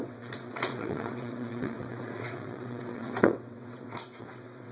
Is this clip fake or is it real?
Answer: fake